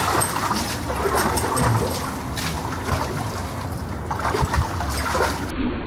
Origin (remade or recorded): recorded